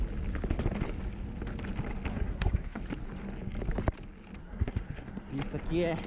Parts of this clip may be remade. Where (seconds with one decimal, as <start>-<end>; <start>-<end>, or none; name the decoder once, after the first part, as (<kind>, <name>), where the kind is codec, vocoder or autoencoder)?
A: 2.1-2.8 (codec, SNAC); 4.4-5.3